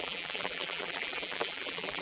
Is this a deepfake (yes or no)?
yes